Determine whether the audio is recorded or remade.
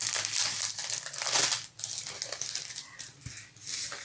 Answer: recorded